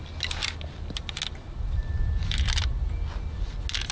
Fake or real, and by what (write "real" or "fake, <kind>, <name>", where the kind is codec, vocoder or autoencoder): real